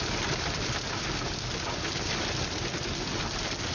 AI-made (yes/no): no